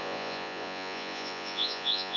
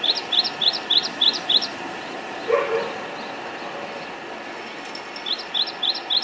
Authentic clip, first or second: second